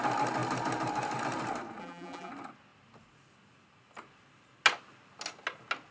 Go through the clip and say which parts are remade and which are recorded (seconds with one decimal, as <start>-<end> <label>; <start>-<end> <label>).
0.0-1.8 recorded; 1.8-2.3 remade; 2.3-5.9 recorded